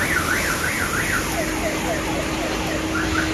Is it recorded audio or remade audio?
recorded